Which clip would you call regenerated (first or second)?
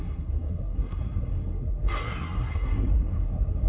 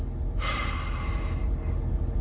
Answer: first